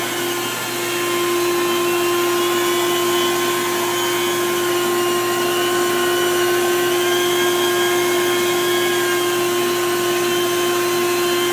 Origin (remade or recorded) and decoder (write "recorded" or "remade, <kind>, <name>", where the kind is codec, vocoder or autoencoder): recorded